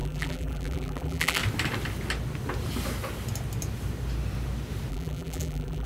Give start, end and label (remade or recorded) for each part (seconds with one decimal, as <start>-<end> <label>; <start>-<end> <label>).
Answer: 0.0-1.4 remade; 1.4-4.9 recorded; 4.9-5.9 remade